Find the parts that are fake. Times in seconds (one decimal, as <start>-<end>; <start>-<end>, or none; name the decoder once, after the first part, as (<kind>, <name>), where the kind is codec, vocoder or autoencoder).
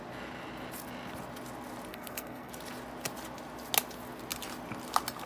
1.9-2.5 (codec, SNAC)